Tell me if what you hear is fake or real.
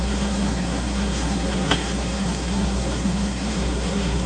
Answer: fake